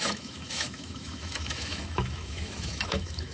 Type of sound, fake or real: fake